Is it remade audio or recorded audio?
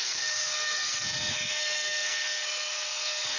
remade